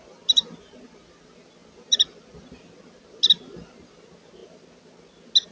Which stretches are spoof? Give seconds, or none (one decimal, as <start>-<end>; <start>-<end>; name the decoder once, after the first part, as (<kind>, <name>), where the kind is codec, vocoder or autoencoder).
none